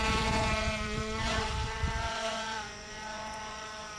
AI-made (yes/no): yes